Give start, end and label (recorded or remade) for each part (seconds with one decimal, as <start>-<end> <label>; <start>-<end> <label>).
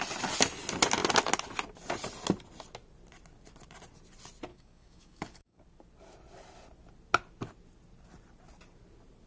0.0-4.5 recorded; 4.5-5.6 remade; 5.6-9.3 recorded